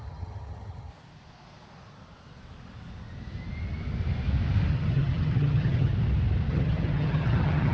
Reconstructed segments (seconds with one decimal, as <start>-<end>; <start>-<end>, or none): 0.0-0.9; 4.7-5.9; 6.5-7.7